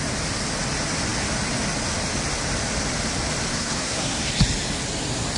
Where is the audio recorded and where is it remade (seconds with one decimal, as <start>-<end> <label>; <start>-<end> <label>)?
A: 0.0-3.5 recorded; 3.5-4.3 remade; 4.3-5.4 recorded